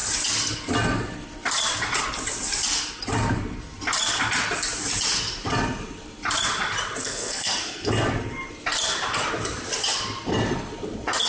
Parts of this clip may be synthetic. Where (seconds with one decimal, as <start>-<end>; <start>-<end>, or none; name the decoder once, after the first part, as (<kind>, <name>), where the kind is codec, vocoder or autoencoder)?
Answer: 7.0-7.9 (codec, SNAC)